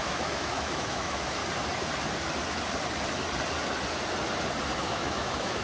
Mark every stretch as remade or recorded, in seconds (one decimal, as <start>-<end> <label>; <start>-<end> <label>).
0.0-1.4 remade; 1.4-4.8 recorded; 4.8-5.6 remade